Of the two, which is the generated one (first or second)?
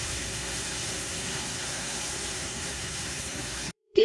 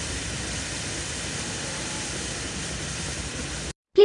first